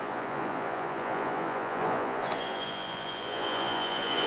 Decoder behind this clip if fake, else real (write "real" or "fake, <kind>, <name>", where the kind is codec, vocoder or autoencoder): fake, vocoder, Vocos